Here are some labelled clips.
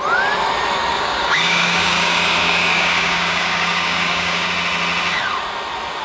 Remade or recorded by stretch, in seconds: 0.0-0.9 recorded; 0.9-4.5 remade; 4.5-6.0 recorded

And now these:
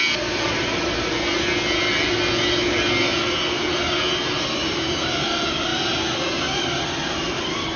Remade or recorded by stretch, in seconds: 0.0-7.8 recorded

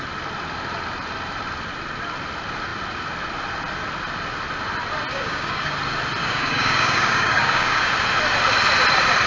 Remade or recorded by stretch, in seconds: 0.0-5.1 recorded; 5.1-5.7 remade; 5.7-6.2 recorded; 6.2-7.9 remade; 7.9-9.3 recorded